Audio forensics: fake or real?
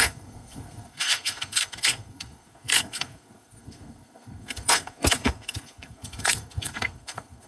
fake